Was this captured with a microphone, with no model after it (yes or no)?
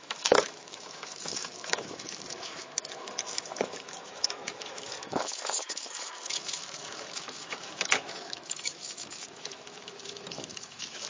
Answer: no